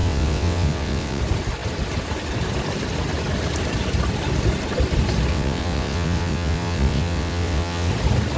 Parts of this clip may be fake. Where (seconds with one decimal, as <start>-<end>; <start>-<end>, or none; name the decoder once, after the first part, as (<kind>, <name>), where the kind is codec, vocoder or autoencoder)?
0.0-1.2 (vocoder, WaveNeXt); 5.3-7.9